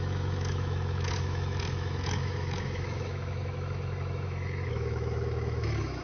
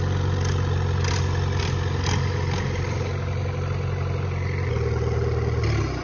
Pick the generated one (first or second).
first